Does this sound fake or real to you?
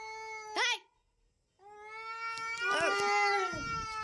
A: real